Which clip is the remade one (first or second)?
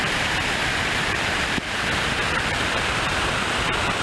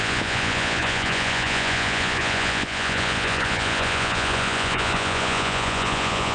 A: second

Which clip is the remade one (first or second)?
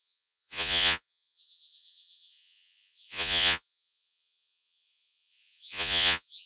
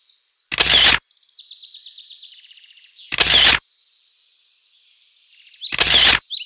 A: first